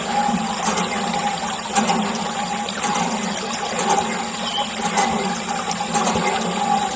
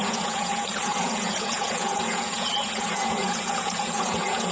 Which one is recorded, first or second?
first